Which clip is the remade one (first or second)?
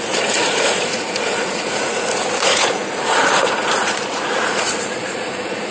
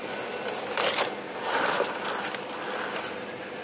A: first